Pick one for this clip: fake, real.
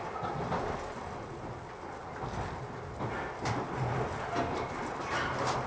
real